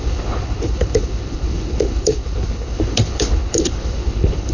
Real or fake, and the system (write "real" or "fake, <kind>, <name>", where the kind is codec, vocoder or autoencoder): fake, codec, HILCodec